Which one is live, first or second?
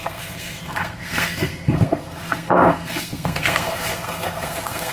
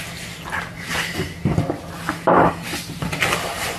second